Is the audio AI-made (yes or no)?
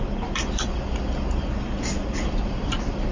no